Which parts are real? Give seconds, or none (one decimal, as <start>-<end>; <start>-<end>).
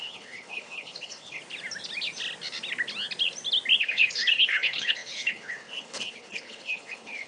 1.4-3.8